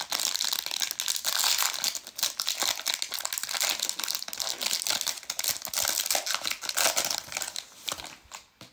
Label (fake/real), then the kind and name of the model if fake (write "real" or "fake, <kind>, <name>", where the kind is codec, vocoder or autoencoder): real